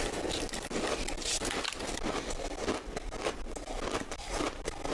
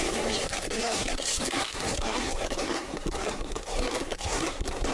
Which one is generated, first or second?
second